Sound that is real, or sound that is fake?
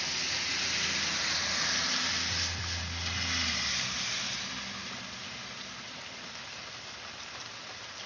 real